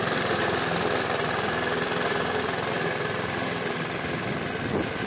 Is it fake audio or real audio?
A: fake